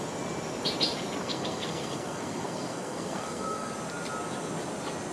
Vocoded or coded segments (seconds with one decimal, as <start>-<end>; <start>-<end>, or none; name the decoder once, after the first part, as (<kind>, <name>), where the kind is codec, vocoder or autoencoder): 1.2-3.7 (codec, SNAC)